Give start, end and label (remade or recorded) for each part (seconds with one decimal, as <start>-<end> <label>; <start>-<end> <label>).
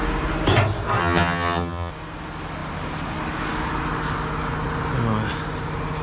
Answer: 0.0-1.0 recorded; 1.0-1.9 remade; 1.9-6.0 recorded